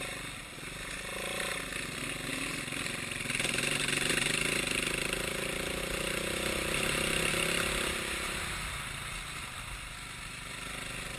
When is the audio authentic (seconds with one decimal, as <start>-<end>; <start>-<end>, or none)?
0.0-11.2